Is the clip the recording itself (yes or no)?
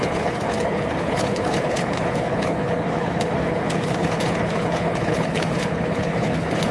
no